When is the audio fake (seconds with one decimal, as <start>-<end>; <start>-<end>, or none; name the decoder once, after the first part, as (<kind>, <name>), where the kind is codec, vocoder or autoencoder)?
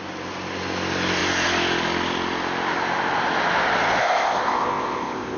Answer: 4.0-5.4 (codec, ZipCodec)